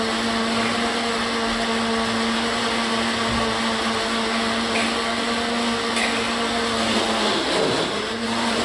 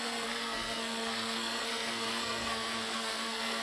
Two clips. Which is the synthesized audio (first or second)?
second